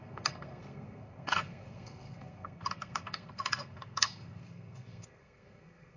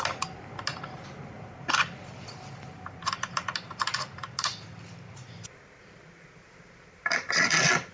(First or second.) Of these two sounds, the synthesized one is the first